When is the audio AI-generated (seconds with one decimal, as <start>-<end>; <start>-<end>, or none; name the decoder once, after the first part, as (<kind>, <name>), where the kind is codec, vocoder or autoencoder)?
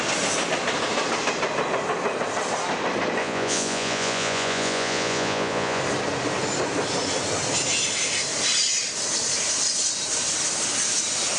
3.2-5.8 (vocoder, Vocos)